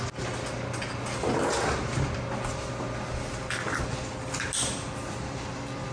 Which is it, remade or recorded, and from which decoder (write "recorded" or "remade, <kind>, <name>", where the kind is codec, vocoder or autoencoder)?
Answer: recorded